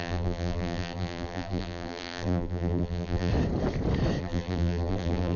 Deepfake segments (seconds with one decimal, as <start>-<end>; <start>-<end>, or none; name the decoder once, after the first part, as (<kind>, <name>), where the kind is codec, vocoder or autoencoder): 0.0-3.3 (vocoder, BigVGAN v2); 4.2-5.4